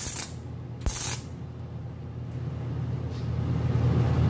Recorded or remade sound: recorded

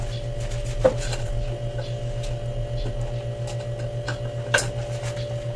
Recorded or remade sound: recorded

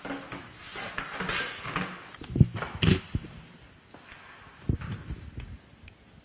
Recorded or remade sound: recorded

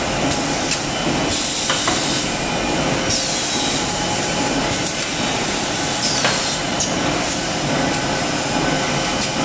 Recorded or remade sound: recorded